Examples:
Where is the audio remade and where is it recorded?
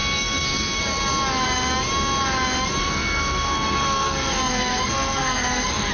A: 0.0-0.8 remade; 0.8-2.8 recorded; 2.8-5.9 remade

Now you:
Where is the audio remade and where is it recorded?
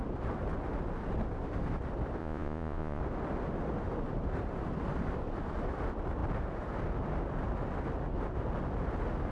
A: 0.0-2.2 recorded; 2.2-3.0 remade; 3.0-9.3 recorded